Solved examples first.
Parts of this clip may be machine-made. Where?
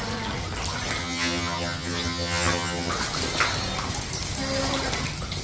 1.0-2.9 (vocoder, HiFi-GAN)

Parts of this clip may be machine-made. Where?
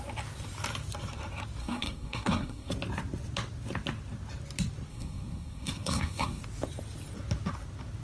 1.6-2.7 (codec, SNAC); 4.9-6.4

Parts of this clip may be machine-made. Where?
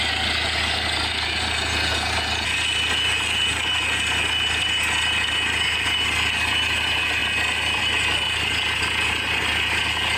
none